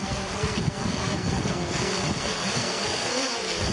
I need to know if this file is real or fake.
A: fake